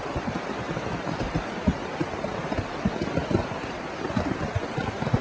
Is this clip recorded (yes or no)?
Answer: no